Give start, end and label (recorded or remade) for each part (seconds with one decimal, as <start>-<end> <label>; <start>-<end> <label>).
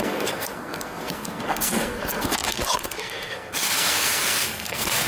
0.0-5.1 remade